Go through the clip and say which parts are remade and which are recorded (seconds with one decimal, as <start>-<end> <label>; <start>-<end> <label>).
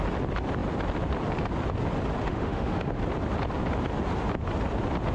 0.0-2.2 recorded; 2.2-3.0 remade; 3.0-5.1 recorded